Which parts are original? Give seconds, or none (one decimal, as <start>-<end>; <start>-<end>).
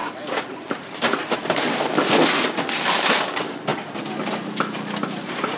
0.0-5.6